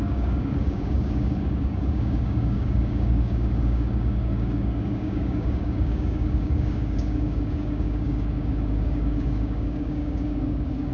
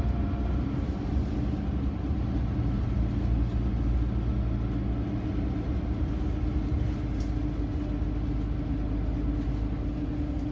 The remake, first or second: first